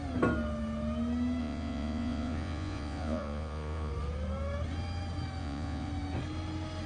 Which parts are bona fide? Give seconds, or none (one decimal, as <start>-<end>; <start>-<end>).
0.0-1.4; 3.9-5.4; 5.9-6.9